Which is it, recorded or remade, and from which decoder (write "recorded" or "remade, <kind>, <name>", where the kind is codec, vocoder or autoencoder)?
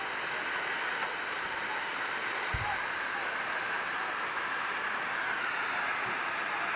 recorded